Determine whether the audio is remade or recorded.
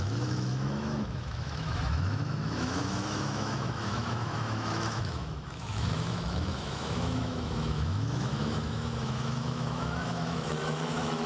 remade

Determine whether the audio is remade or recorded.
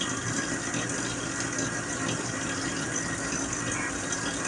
recorded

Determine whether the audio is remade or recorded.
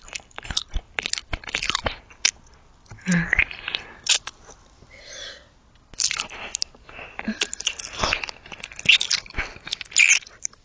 recorded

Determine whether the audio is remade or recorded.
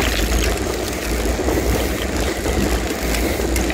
recorded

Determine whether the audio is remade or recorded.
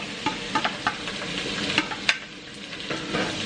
recorded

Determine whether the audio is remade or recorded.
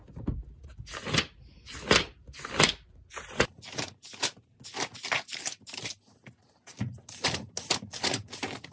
recorded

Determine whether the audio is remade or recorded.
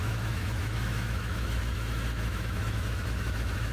remade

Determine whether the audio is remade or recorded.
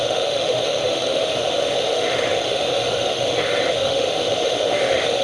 remade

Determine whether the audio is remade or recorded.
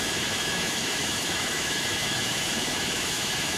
remade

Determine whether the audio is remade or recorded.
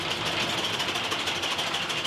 recorded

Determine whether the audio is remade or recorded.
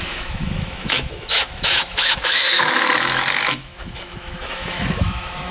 remade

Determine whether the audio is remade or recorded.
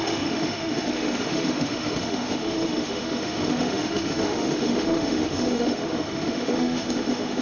remade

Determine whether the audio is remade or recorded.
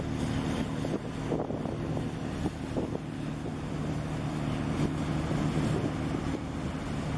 recorded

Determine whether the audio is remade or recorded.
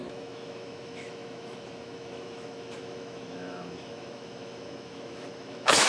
remade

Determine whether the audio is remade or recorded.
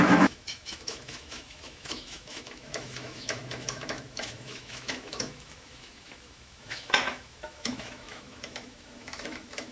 remade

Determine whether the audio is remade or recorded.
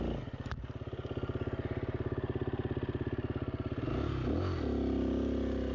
recorded